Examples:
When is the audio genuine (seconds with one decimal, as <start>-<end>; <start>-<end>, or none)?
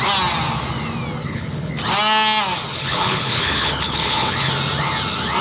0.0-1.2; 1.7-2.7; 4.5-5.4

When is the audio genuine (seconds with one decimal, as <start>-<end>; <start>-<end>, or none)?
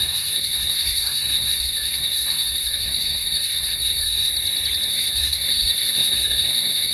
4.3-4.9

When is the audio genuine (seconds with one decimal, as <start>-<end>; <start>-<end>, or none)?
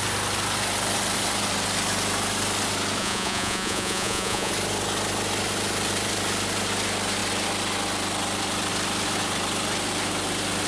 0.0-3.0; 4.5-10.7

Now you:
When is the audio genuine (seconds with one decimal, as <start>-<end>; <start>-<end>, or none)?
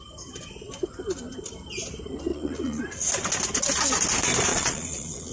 0.0-2.3; 2.8-4.5